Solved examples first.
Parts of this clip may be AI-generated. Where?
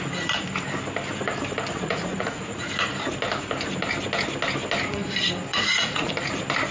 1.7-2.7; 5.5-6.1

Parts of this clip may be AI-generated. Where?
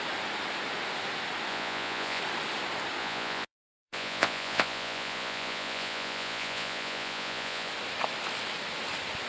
1.5-2.2; 3.0-7.7